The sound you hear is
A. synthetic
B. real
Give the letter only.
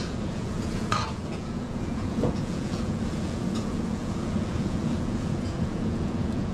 A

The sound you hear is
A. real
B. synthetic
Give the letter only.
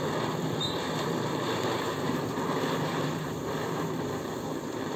B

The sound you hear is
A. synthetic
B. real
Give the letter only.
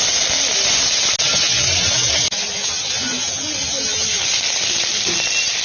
B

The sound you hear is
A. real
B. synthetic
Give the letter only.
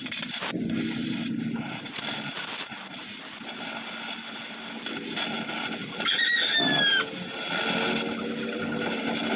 A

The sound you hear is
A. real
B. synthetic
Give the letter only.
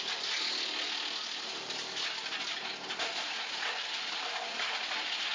A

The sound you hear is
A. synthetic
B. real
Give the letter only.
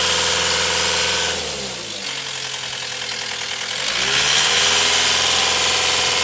B